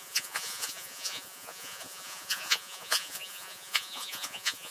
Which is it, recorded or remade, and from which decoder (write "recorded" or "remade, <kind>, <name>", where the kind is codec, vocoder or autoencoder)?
remade, vocoder, Vocos